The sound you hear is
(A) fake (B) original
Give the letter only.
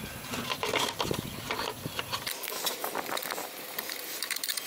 A